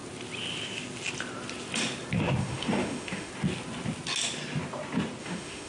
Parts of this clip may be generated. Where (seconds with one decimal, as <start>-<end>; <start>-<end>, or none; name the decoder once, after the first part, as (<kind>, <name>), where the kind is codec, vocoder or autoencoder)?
2.4-3.3 (autoencoder, DAC-VAE); 5.2-5.7